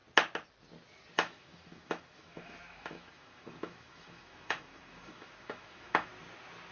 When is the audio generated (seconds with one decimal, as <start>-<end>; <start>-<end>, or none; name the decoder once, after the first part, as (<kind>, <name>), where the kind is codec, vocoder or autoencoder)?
1.1-6.1 (autoencoder, DAC-VAE)